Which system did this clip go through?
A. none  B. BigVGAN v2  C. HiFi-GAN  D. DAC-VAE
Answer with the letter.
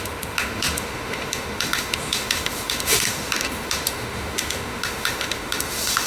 D